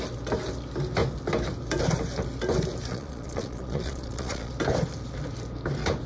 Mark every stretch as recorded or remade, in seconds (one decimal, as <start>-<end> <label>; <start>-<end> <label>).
0.0-2.9 recorded; 2.9-4.5 remade; 4.5-6.1 recorded